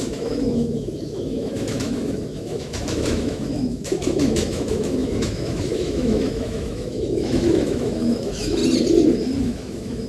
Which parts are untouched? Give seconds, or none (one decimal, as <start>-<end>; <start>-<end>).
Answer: 8.6-9.4